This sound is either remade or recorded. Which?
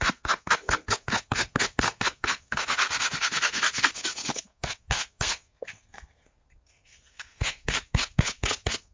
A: remade